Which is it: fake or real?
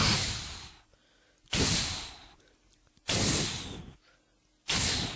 real